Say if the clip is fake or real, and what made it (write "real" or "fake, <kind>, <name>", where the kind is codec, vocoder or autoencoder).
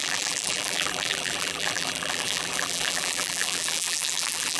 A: fake, vocoder, BigVGAN v2